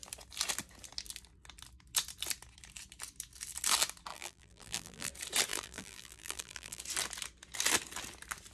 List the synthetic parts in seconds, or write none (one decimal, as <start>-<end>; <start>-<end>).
4.1-5.1; 5.5-6.8